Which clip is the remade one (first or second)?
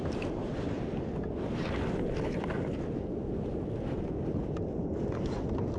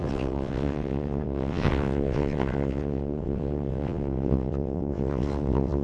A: second